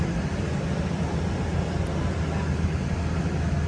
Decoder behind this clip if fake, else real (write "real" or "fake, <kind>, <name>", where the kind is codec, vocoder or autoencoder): real